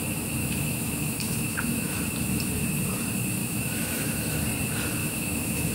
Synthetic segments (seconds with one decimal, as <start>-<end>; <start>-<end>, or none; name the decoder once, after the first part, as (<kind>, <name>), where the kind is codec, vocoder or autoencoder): 0.4-2.0 (autoencoder, DAC-VAE); 3.4-4.3; 5.0-5.7